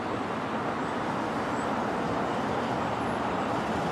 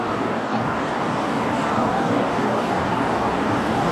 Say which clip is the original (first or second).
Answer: first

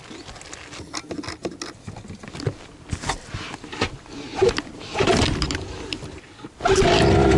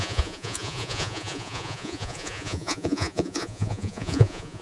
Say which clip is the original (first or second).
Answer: first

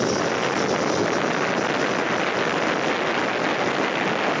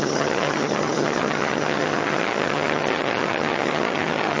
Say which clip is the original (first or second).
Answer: first